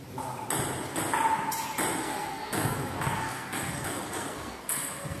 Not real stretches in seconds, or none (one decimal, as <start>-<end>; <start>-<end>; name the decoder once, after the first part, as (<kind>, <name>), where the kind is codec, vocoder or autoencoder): 2.0-5.2 (codec, SNAC)